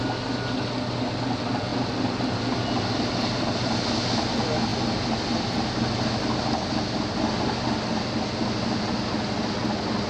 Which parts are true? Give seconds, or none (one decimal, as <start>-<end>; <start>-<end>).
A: 0.0-10.1